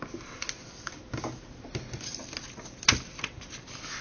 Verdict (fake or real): real